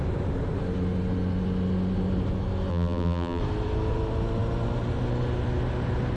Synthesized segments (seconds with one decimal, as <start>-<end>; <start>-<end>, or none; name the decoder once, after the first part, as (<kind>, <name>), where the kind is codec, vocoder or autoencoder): 2.7-3.4 (vocoder, BigVGAN v2)